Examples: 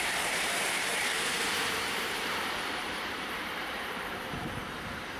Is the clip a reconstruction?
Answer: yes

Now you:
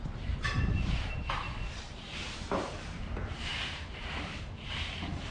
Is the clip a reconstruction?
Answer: yes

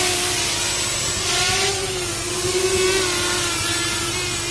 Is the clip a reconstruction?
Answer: no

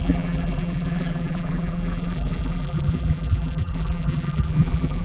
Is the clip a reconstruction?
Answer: yes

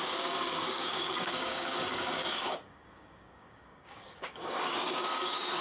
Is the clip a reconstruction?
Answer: yes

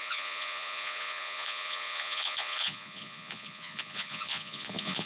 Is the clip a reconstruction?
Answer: yes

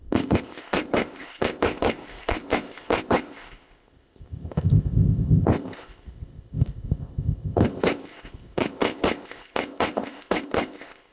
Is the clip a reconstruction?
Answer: yes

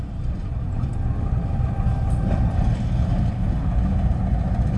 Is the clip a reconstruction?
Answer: no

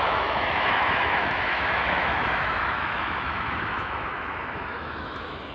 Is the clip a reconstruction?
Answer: yes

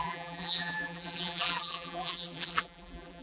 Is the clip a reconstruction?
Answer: yes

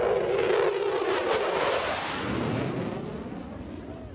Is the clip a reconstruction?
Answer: no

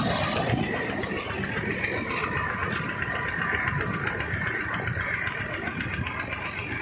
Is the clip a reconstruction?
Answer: no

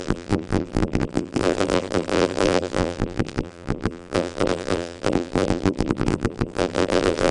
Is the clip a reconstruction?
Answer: yes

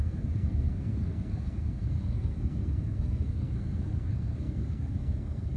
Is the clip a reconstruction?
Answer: yes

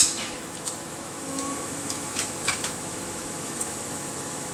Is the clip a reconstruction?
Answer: yes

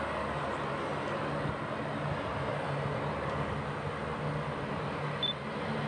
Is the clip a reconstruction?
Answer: no